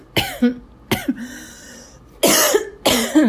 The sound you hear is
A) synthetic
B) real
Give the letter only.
B